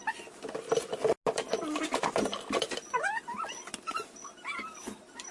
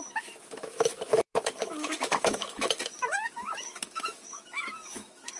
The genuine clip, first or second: first